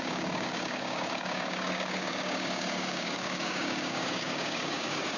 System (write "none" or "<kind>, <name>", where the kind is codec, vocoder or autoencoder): codec, DAC